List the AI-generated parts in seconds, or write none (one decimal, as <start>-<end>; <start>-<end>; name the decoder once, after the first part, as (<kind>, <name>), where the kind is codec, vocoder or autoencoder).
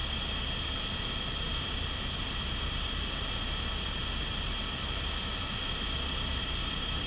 1.6-7.1 (vocoder, BigVGAN v2)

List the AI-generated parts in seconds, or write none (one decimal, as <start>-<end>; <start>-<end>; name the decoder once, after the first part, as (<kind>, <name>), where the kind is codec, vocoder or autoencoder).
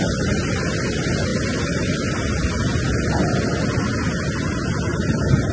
none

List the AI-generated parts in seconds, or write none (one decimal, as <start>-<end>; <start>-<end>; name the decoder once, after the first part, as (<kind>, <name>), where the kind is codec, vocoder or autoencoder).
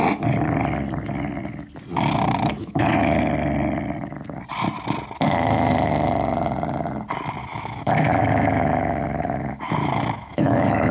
2.6-3.2 (autoencoder, DAC-VAE); 7.4-10.9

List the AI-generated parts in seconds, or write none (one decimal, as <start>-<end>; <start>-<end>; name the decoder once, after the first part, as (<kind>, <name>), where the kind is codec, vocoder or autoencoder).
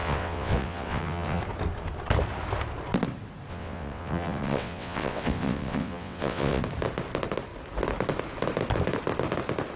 0.0-1.4 (vocoder, WaveNeXt); 3.5-6.6